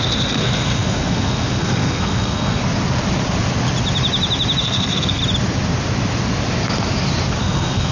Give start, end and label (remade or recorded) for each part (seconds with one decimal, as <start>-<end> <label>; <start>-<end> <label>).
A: 0.0-2.6 remade; 2.6-4.6 recorded; 4.6-5.2 remade; 5.2-7.4 recorded; 7.4-7.9 remade